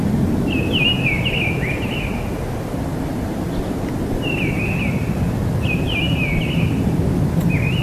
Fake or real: real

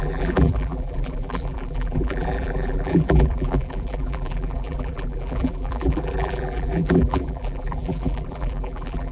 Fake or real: fake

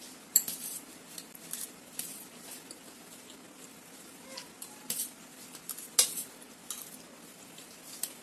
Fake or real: real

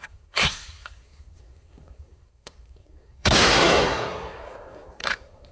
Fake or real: fake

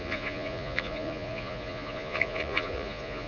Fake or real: fake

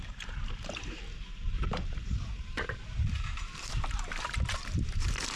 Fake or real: fake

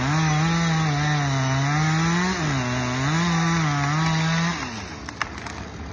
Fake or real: real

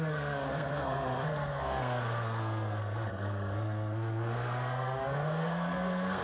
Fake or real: fake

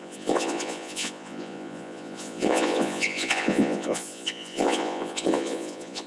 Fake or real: fake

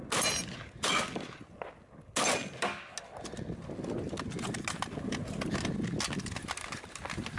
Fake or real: real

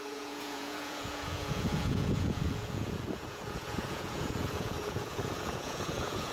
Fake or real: fake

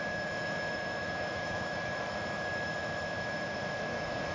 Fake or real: fake